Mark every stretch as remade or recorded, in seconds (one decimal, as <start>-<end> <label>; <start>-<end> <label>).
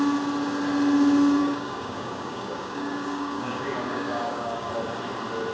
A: 0.0-1.4 recorded; 1.4-4.7 remade; 4.7-5.5 recorded